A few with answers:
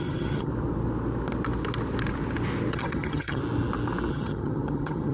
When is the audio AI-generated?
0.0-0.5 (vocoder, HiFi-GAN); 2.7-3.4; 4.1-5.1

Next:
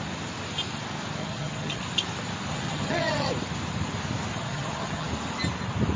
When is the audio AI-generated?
1.2-1.8 (vocoder, HiFi-GAN); 2.5-3.3; 4.3-5.1

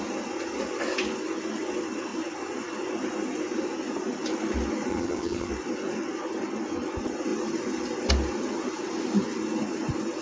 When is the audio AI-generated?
4.9-5.5 (vocoder, HiFi-GAN)

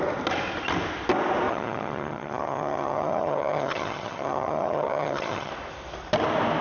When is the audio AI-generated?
1.5-5.5 (vocoder, HiFi-GAN)

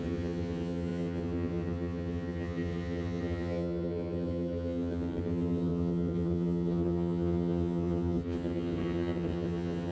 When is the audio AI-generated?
0.0-9.9 (vocoder, HiFi-GAN)

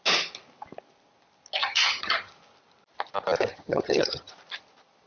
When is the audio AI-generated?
1.6-2.3 (vocoder, HiFi-GAN); 3.5-4.3